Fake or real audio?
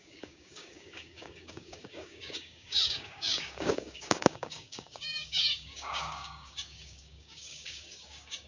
fake